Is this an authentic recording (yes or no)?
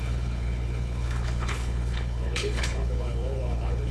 no